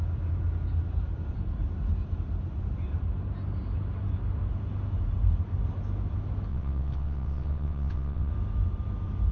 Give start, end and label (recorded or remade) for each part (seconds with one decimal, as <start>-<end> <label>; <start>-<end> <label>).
0.0-6.5 recorded; 6.5-8.3 remade; 8.3-9.3 recorded